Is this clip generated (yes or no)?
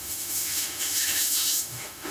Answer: yes